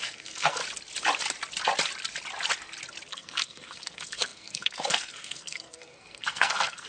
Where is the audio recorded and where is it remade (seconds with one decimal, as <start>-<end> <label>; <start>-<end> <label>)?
0.0-0.6 remade; 0.6-3.1 recorded; 3.1-6.9 remade